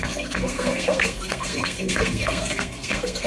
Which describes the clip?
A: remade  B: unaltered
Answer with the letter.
A